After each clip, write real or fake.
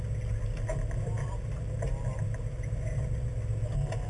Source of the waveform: real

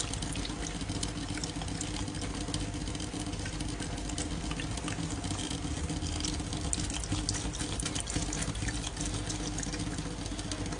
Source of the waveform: real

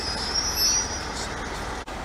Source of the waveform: real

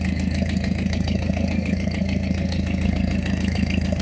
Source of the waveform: fake